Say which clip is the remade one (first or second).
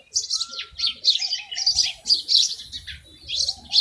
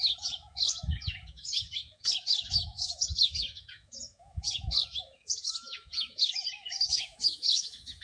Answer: second